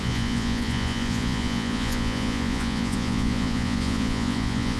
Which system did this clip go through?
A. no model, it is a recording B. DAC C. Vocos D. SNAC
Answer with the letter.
C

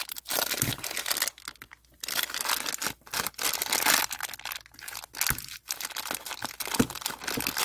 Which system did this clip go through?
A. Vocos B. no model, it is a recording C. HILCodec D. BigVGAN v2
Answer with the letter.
B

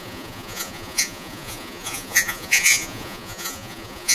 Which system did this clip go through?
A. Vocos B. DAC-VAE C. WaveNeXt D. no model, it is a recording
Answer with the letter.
A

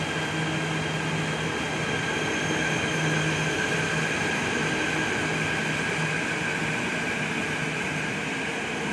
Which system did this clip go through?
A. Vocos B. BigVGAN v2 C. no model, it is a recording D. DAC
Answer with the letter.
C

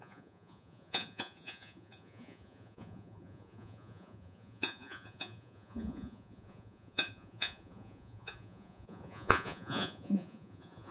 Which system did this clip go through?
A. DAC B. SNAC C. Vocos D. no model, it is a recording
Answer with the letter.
C